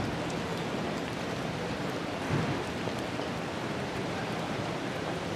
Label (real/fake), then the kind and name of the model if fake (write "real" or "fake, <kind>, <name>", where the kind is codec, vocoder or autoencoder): real